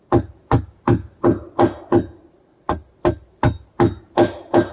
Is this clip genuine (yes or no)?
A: yes